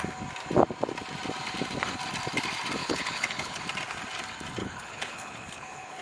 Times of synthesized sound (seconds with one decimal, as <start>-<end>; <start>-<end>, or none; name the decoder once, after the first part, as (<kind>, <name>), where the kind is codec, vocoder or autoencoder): 2.8-3.6 (codec, HILCodec); 4.6-6.0